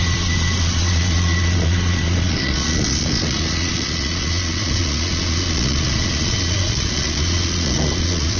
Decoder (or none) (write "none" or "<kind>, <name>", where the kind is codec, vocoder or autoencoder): vocoder, Vocos